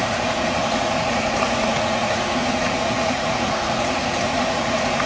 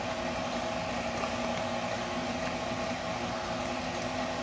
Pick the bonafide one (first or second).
second